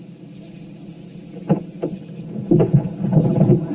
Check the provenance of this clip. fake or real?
real